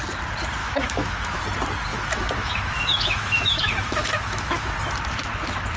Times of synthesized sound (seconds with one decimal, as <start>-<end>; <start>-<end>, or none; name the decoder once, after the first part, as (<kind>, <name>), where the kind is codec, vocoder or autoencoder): 0.6-1.4 (autoencoder, DAC-VAE); 1.9-4.7